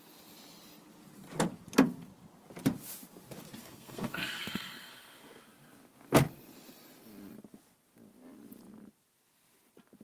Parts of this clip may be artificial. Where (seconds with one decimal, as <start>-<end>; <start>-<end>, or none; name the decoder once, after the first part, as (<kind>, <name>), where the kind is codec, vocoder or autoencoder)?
3.6-5.3 (codec, SNAC)